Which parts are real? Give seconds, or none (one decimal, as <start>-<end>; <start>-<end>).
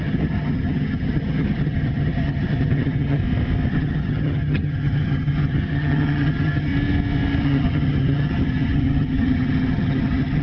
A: 3.2-3.7; 6.7-7.4